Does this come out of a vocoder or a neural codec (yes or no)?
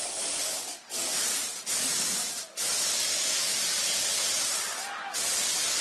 no